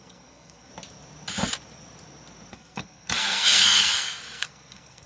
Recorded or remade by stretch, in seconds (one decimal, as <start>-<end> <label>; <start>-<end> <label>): 0.0-0.7 remade; 0.7-2.5 recorded; 2.5-5.1 remade